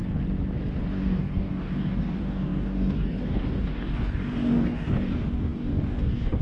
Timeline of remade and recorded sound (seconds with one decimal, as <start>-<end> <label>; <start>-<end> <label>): 0.0-0.9 recorded; 0.9-6.4 remade